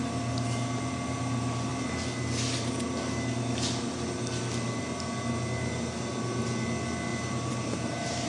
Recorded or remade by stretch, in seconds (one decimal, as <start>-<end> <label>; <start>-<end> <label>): 0.0-7.1 recorded; 7.1-8.3 remade